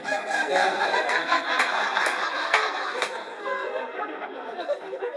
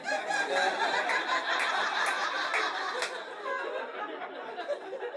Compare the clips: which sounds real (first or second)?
second